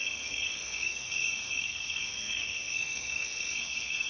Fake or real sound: fake